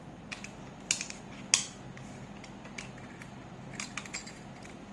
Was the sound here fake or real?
real